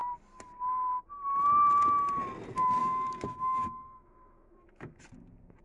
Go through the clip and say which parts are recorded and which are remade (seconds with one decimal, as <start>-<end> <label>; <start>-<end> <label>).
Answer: 0.0-2.8 recorded; 2.8-5.0 remade; 5.0-5.6 recorded